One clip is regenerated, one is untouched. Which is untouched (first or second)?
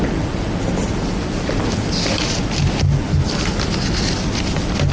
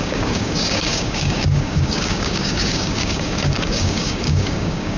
first